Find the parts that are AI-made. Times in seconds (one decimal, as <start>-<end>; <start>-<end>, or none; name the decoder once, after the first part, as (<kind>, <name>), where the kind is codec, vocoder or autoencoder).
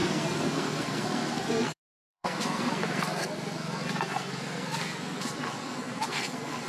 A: 0.0-6.7 (codec, SNAC)